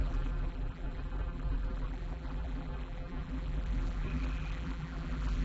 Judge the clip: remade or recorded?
remade